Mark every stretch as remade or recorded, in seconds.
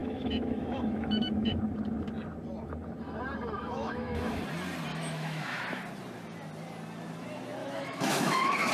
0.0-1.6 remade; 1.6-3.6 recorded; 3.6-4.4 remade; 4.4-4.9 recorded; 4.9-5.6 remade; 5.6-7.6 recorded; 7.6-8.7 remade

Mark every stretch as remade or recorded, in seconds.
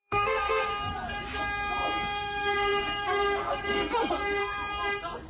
0.0-0.7 remade; 0.7-2.2 recorded; 2.2-4.4 remade; 4.4-5.3 recorded